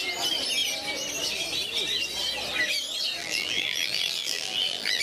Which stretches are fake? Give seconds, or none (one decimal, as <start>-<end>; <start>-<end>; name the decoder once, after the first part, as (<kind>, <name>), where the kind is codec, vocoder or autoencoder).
3.2-5.0 (vocoder, BigVGAN v2)